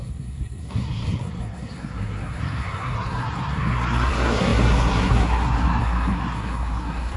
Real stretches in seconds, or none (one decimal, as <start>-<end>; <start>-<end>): none